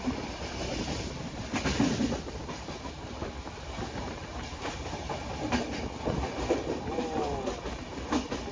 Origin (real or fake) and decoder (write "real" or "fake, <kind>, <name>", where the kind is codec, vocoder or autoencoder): real